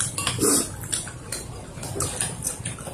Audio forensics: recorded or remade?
recorded